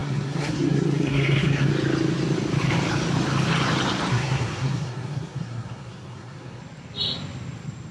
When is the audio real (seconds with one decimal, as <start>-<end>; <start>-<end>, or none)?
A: 1.7-4.1; 6.6-7.9